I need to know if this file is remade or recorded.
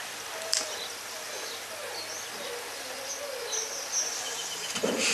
recorded